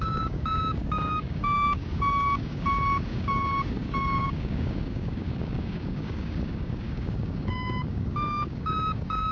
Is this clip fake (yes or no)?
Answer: yes